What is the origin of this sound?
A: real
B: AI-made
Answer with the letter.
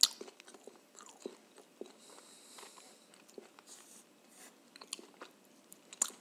A